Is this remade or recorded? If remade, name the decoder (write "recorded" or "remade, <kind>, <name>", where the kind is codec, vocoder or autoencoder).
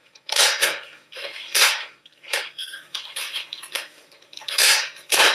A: remade, codec, SNAC